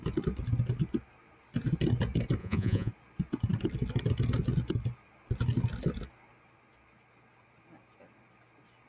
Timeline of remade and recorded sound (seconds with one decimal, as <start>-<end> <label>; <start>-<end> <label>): 0.0-2.4 recorded; 2.4-2.9 remade; 2.9-8.9 recorded

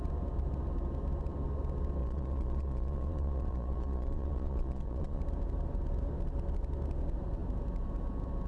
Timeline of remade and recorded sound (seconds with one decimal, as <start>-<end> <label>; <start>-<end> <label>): 0.0-2.0 recorded; 2.0-5.2 remade; 5.2-8.5 recorded

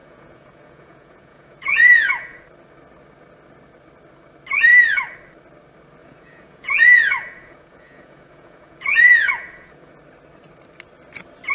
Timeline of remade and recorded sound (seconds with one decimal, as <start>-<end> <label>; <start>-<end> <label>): 0.0-2.4 remade; 2.4-6.0 recorded; 6.0-10.0 remade; 10.0-11.5 recorded

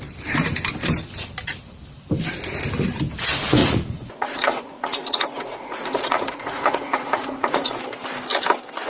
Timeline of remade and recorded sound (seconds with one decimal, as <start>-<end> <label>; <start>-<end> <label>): 0.0-3.6 recorded; 3.6-7.8 remade; 7.8-8.9 recorded

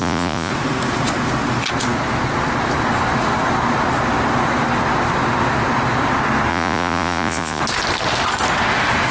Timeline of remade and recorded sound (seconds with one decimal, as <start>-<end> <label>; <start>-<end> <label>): 0.0-0.5 remade; 0.5-6.5 recorded; 6.5-7.6 remade; 7.6-9.1 recorded